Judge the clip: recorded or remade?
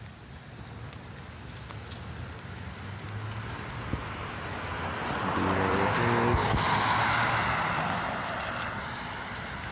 recorded